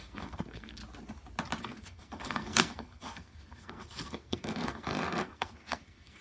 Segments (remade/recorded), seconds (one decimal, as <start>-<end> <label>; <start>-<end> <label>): 0.0-0.8 remade; 0.8-1.6 recorded; 1.6-6.2 remade